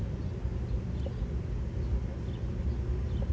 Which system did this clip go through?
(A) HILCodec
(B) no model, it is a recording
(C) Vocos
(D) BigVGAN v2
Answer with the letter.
B